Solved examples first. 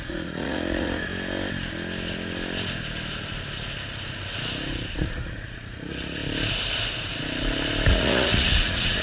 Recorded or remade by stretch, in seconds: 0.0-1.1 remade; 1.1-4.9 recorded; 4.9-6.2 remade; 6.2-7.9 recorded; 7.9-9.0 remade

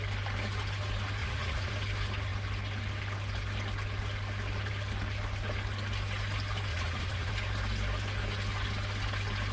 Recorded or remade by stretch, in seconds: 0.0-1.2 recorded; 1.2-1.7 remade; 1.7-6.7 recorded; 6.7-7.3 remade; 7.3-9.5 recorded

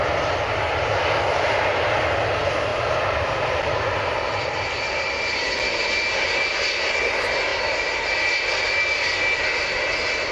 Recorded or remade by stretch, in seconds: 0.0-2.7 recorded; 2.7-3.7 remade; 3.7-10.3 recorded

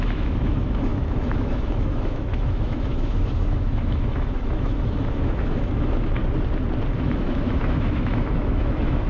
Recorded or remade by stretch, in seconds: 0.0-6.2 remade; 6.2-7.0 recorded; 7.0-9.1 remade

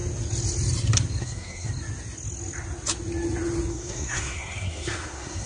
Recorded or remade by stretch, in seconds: 0.0-1.2 recorded; 1.2-1.7 remade; 1.7-3.7 recorded; 3.7-5.5 remade

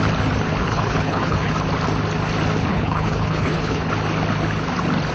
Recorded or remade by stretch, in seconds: 0.0-0.7 recorded; 0.7-1.5 remade; 1.5-2.7 recorded; 2.7-3.9 remade; 3.9-5.1 recorded

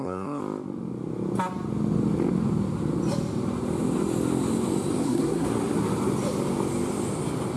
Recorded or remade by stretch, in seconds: 0.0-0.4 remade; 0.4-5.0 recorded; 5.0-5.5 remade; 5.5-7.6 recorded

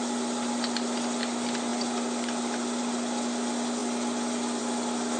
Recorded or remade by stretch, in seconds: 0.0-5.2 recorded